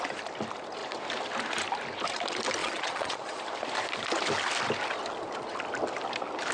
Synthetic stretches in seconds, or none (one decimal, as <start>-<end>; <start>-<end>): 2.6-3.4